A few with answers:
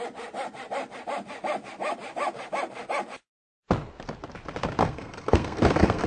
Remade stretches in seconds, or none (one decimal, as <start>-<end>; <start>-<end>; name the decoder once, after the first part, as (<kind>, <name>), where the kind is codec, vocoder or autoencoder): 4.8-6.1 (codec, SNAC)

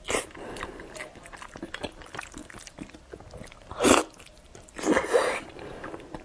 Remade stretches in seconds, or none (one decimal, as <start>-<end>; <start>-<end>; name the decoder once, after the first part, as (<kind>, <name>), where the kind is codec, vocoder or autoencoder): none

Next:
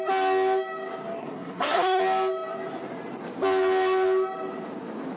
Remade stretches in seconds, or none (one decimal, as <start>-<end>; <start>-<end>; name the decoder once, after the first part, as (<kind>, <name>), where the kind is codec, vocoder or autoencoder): 1.2-2.0 (codec, SNAC)